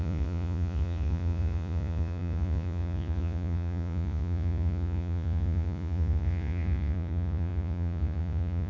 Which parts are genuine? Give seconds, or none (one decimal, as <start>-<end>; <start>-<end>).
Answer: none